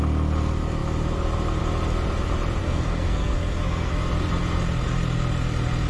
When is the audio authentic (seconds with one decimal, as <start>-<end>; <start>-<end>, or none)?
0.0-2.6; 3.9-5.9